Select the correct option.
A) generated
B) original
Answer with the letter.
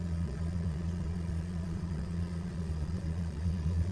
A